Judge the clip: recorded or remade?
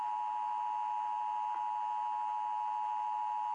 recorded